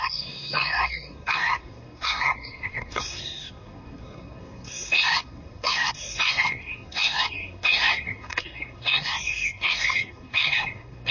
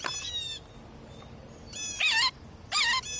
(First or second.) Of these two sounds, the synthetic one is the first